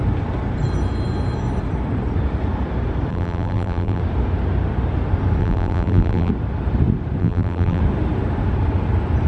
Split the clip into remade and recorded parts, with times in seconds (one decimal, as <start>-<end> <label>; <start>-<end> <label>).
0.0-3.1 recorded; 3.1-4.0 remade; 4.0-5.4 recorded; 5.4-6.3 remade; 6.3-7.2 recorded; 7.2-7.8 remade; 7.8-9.3 recorded